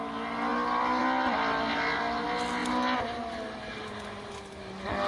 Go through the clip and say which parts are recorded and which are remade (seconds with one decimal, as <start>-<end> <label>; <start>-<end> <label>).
0.0-5.1 recorded